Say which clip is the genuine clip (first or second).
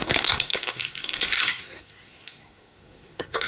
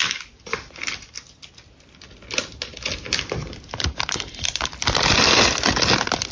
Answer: second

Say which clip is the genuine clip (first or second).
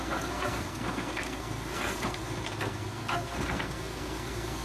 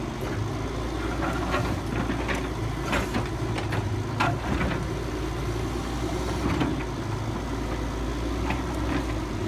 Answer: second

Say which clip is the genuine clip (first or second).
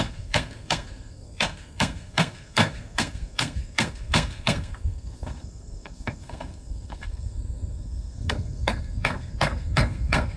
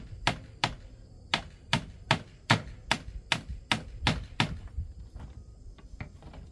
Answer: second